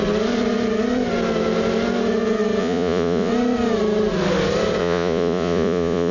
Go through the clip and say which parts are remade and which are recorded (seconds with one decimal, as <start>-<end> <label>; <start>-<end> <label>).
0.0-2.6 recorded; 2.6-3.3 remade; 3.3-4.8 recorded; 4.8-6.1 remade